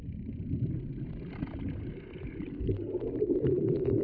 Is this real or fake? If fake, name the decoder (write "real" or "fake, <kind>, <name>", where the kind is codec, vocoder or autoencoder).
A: real